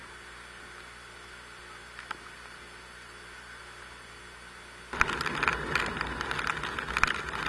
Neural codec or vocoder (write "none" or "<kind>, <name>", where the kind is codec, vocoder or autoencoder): none